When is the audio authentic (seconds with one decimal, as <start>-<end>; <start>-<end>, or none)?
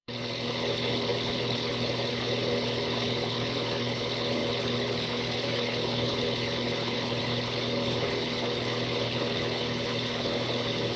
none